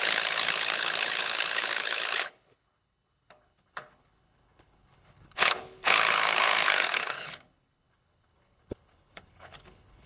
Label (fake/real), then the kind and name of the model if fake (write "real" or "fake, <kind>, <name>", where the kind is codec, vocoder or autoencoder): fake, codec, HILCodec